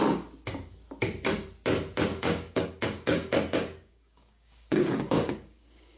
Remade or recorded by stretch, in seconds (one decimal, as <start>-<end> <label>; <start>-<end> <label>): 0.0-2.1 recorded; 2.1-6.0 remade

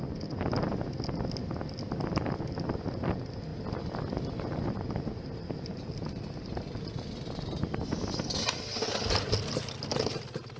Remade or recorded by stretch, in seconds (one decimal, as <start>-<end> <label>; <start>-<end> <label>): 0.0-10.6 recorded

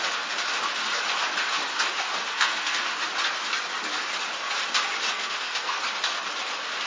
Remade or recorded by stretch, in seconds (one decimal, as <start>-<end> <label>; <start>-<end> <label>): 0.0-2.3 recorded; 2.3-2.9 remade; 2.9-5.1 recorded; 5.1-5.8 remade; 5.8-6.9 recorded

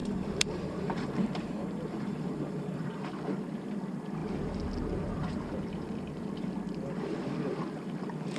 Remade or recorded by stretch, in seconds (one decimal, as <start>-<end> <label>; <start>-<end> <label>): 0.0-3.0 remade; 3.0-8.4 recorded

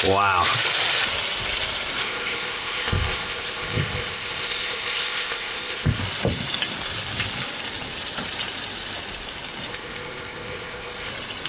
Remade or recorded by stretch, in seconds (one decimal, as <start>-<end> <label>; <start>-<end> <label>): 0.0-2.0 recorded; 2.0-6.0 remade; 6.0-9.7 recorded; 9.7-11.1 remade; 11.1-11.5 recorded

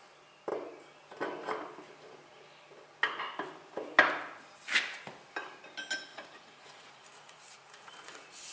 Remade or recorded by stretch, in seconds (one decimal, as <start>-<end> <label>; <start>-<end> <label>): 0.0-6.1 recorded; 6.1-8.5 remade

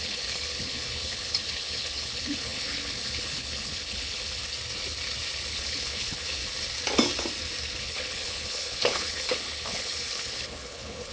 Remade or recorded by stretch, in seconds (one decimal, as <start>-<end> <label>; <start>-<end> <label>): 0.0-4.4 remade; 4.4-5.5 recorded; 5.5-6.4 remade; 6.4-7.8 recorded; 7.8-11.1 remade